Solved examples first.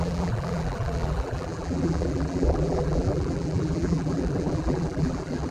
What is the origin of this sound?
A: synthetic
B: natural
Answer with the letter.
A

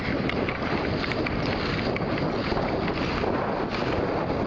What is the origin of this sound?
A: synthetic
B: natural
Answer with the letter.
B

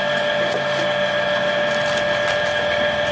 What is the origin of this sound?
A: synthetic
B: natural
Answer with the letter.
B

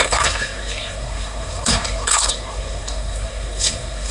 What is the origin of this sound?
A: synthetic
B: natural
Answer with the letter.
A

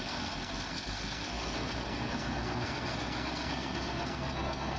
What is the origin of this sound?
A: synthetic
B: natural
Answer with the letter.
A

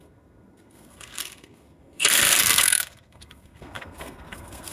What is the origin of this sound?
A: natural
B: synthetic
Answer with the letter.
B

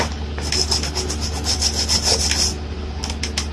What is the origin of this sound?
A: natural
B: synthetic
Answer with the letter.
A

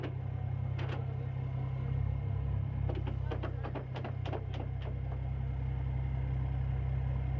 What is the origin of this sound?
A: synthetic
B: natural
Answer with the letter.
B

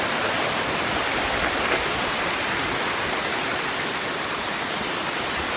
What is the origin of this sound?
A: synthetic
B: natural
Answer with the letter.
A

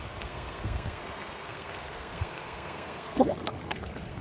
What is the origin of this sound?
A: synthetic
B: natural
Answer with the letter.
A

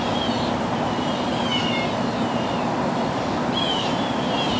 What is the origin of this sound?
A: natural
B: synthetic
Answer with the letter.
B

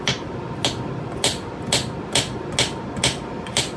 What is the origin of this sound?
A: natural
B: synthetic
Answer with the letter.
A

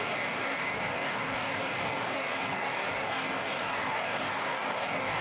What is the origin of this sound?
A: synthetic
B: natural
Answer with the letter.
A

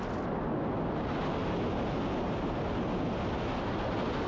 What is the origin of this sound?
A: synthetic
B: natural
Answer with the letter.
B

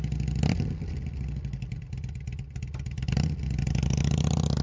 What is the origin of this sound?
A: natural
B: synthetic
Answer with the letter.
A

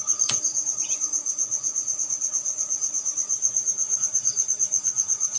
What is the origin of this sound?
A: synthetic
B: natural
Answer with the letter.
A